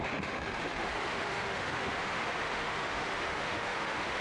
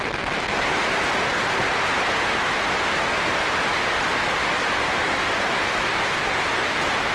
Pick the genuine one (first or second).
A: second